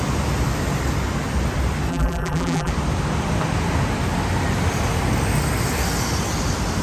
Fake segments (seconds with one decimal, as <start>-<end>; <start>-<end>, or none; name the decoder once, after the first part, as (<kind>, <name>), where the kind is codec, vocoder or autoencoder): 1.9-2.7 (vocoder, BigVGAN v2)